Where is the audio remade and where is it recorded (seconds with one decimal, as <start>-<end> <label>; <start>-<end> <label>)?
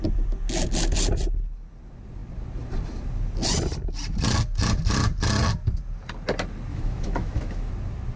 0.0-6.7 recorded; 6.7-7.7 remade; 7.7-8.2 recorded